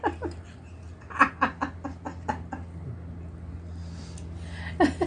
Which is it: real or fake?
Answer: real